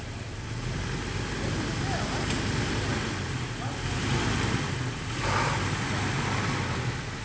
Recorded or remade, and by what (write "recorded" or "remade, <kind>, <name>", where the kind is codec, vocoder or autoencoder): recorded